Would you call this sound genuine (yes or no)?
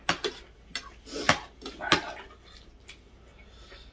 yes